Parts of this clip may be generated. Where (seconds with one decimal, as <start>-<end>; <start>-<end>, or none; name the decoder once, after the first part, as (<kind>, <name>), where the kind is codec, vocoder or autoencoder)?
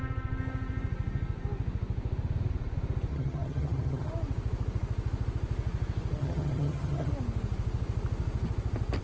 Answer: 3.1-4.1 (vocoder, HiFi-GAN); 6.2-7.1